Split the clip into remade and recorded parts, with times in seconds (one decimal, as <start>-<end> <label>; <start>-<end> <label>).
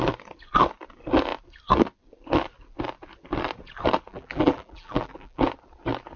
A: 0.0-4.1 recorded; 4.1-5.4 remade; 5.4-6.2 recorded